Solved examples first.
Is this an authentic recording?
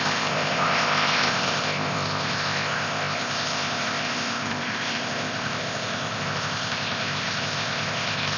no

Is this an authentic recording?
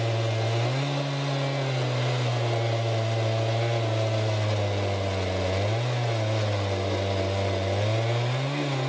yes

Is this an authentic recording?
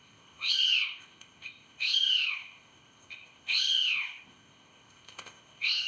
no